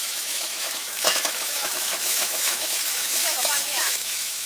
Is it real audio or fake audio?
fake